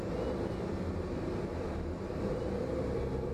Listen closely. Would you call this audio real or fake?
real